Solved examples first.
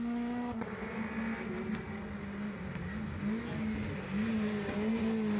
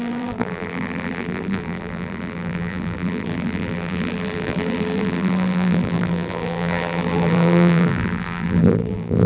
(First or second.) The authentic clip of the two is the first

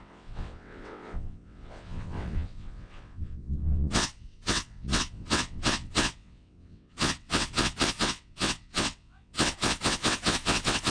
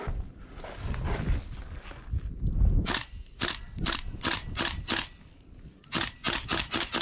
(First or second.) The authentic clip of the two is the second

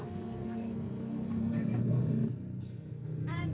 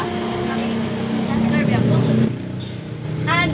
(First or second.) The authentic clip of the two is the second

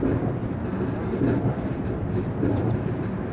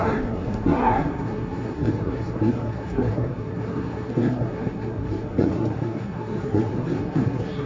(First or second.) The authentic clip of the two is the first